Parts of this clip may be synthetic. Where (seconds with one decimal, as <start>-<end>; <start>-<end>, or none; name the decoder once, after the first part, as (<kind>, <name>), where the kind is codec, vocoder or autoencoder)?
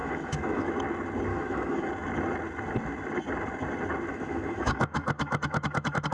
0.0-0.7 (autoencoder, DAC-VAE); 1.3-1.9; 4.1-6.1